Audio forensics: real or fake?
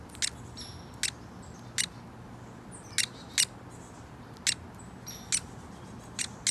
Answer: real